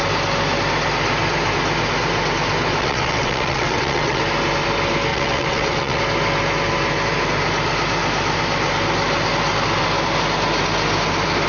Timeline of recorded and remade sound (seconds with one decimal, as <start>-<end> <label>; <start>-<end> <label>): 0.0-2.8 recorded; 2.8-4.2 remade; 4.2-5.1 recorded; 5.1-6.0 remade; 6.0-11.5 recorded